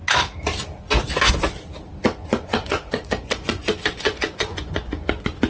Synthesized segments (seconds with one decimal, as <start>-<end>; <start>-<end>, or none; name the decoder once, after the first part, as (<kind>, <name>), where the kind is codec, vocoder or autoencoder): 2.2-5.5 (vocoder, Vocos)